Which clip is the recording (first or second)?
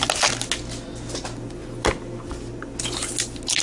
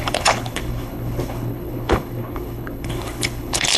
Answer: first